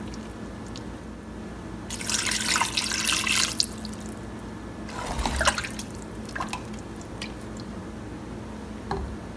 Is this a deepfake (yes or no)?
no